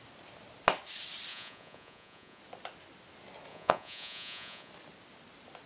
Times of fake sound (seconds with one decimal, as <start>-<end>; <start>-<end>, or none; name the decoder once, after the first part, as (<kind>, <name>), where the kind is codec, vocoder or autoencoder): 1.3-2.4 (vocoder, Vocos); 3.5-4.7